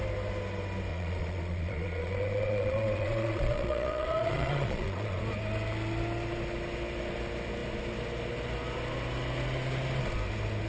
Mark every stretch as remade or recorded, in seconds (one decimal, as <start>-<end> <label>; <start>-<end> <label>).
0.0-0.9 recorded; 0.9-5.2 remade; 5.2-10.7 recorded